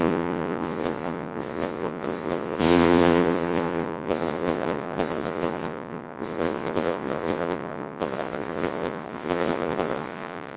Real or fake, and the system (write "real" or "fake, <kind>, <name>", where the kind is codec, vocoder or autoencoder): fake, vocoder, Vocos